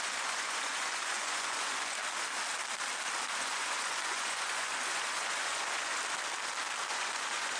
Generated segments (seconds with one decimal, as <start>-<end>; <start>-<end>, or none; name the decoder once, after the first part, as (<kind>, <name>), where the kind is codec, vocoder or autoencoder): 0.0-2.0 (vocoder, Vocos); 3.3-5.9; 6.9-7.6